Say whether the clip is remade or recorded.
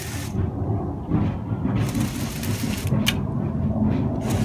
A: recorded